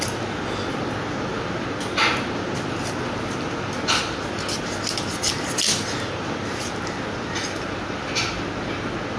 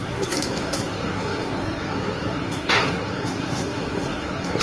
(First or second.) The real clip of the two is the first